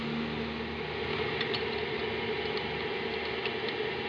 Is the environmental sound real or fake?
real